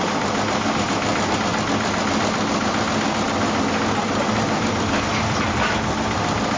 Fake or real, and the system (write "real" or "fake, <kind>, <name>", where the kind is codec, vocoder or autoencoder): real